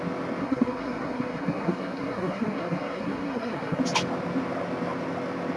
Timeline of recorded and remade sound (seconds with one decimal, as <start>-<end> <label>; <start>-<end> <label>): 0.0-0.4 recorded; 0.4-3.8 remade; 3.8-5.6 recorded